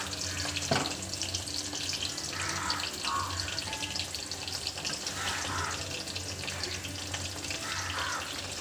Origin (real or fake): real